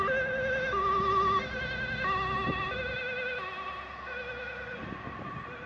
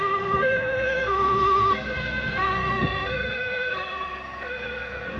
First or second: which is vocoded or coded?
second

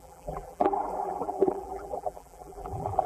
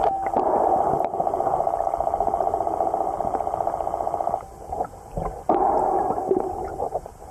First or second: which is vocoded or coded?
first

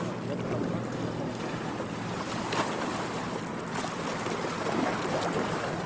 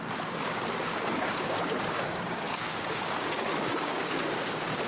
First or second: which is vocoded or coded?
second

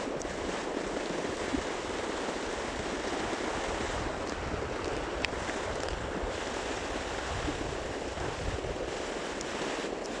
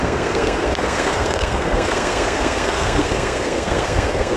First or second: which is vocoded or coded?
second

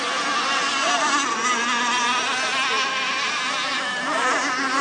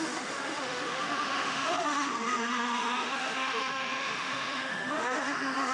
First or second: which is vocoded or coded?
second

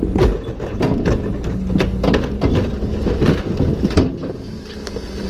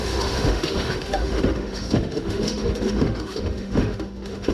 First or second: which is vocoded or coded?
second